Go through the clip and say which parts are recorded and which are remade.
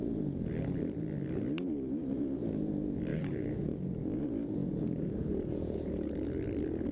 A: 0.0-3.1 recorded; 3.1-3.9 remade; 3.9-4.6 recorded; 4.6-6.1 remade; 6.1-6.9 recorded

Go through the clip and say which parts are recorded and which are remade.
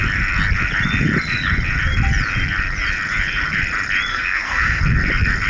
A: 0.0-4.1 recorded; 4.1-4.8 remade; 4.8-5.5 recorded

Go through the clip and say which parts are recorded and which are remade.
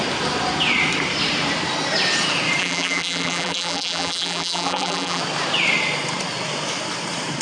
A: 0.0-2.6 recorded; 2.6-5.2 remade; 5.2-7.4 recorded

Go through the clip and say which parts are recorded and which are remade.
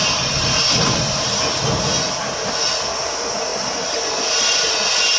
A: 0.0-1.4 remade; 1.4-3.5 recorded; 3.5-4.1 remade; 4.1-5.2 recorded